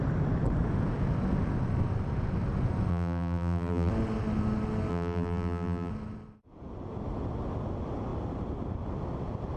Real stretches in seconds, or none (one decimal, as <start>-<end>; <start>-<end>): 0.0-2.9; 3.9-4.9; 5.9-9.6